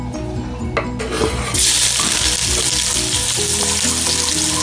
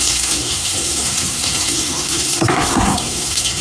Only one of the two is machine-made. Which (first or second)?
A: second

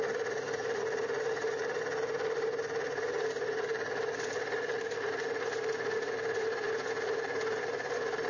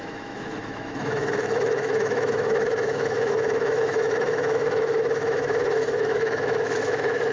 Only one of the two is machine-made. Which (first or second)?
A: second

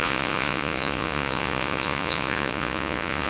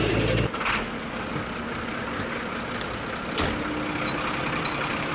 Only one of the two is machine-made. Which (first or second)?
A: first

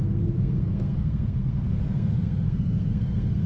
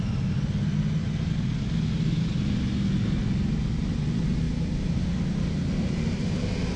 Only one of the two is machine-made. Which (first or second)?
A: first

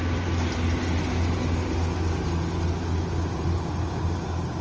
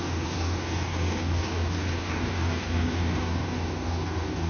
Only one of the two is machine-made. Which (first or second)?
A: second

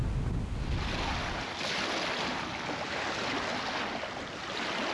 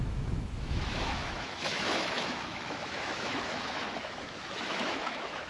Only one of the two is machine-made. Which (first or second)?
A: second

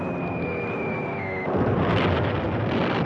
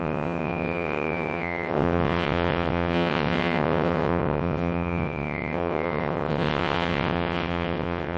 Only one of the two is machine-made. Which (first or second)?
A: second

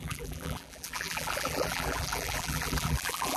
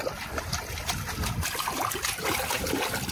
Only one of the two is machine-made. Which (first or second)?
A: first